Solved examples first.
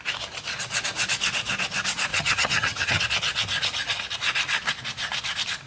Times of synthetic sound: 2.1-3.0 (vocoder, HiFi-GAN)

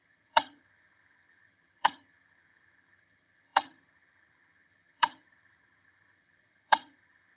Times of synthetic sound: 0.0-7.4 (vocoder, HiFi-GAN)

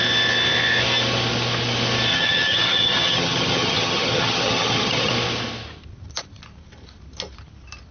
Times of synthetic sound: 2.1-5.1 (vocoder, HiFi-GAN)

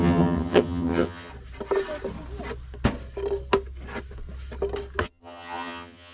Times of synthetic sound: 0.0-1.3 (vocoder, HiFi-GAN); 5.0-6.1

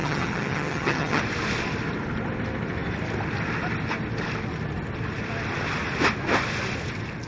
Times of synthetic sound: 0.0-1.2 (vocoder, HiFi-GAN)